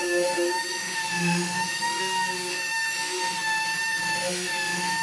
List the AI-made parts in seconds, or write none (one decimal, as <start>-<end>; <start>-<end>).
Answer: 0.0-2.0; 2.5-5.0